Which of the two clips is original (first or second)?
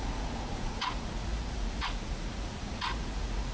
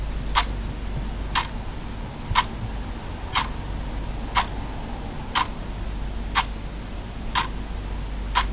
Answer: second